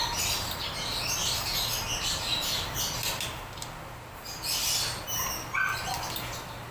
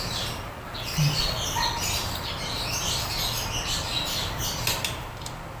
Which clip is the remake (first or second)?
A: second